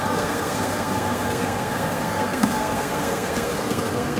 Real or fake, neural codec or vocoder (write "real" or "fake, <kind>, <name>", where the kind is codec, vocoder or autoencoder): fake, codec, SNAC